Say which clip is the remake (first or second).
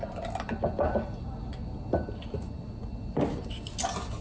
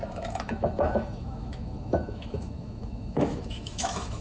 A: second